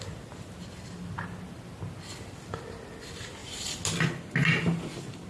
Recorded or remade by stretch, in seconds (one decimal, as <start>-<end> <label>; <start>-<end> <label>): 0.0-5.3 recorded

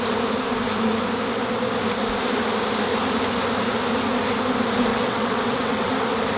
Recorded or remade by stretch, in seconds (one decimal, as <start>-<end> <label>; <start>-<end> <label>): 0.0-4.9 recorded; 4.9-5.9 remade; 5.9-6.4 recorded

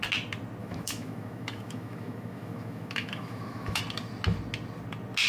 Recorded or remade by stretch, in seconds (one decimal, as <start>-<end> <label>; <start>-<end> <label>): 0.0-0.6 recorded; 0.6-3.8 remade; 3.8-5.3 recorded

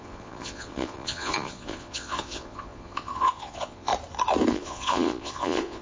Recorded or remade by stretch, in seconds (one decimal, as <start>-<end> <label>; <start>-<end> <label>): 0.0-3.9 remade; 3.9-4.5 recorded; 4.5-5.8 remade

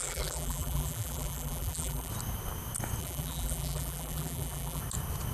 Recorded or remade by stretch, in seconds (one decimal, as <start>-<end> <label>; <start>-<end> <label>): 0.0-2.1 remade; 2.1-3.0 recorded; 3.0-4.8 remade; 4.8-5.3 recorded

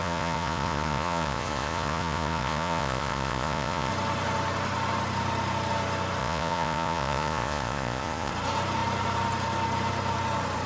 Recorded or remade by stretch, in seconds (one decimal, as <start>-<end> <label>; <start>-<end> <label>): 0.0-3.9 remade; 3.9-6.2 recorded; 6.2-8.3 remade; 8.3-10.7 recorded

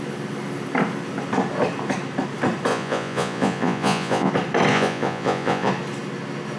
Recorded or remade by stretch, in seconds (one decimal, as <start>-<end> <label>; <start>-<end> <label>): 0.0-2.7 recorded; 2.7-4.3 remade; 4.3-4.7 recorded; 4.7-5.7 remade; 5.7-6.6 recorded